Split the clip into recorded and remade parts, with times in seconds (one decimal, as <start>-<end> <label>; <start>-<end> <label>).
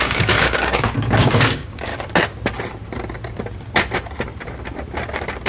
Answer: 0.0-1.9 remade; 1.9-5.5 recorded